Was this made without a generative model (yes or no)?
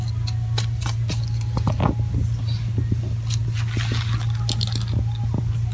yes